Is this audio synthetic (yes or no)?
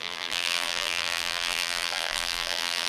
yes